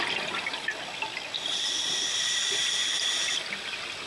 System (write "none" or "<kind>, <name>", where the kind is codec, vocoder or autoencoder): none